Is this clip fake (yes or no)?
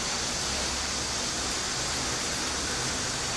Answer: no